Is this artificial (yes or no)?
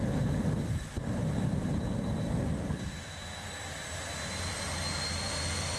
no